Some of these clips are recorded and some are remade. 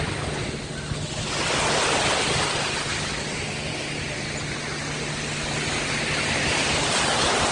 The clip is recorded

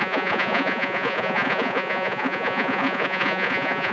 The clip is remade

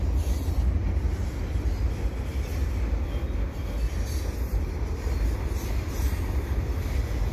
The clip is recorded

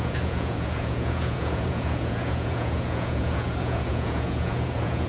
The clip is remade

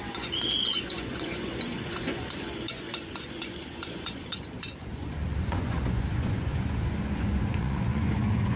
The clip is remade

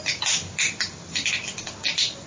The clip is recorded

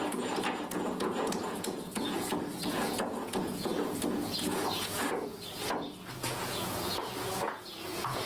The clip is remade